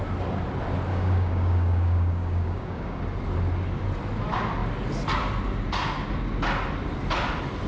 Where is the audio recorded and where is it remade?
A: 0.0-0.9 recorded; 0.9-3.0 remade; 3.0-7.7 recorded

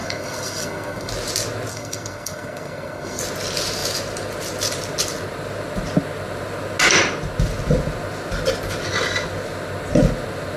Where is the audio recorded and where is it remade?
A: 0.0-1.1 remade; 1.1-1.7 recorded; 1.7-3.2 remade; 3.2-10.6 recorded